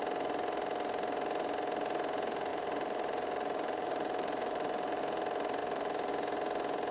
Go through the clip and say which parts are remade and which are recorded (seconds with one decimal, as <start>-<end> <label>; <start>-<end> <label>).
0.0-2.5 recorded; 2.5-5.0 remade; 5.0-5.6 recorded; 5.6-6.1 remade; 6.1-6.9 recorded